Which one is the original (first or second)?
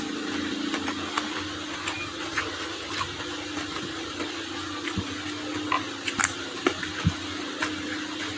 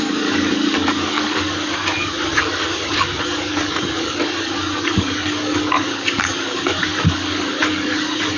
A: first